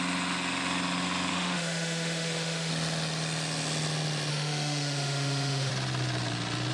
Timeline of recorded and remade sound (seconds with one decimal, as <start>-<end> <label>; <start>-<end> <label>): 0.0-1.3 recorded; 1.3-2.7 remade; 2.7-4.3 recorded; 4.3-5.7 remade; 5.7-6.7 recorded

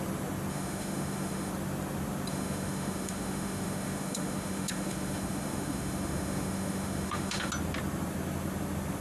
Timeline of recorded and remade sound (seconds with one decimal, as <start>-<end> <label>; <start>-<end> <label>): 0.0-0.5 recorded; 0.5-1.5 remade; 1.5-2.3 recorded; 2.3-7.5 remade; 7.5-9.0 recorded